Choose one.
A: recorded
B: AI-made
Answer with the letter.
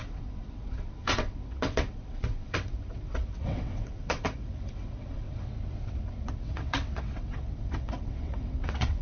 B